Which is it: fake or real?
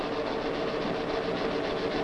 real